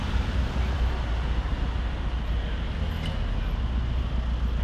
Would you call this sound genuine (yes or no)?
yes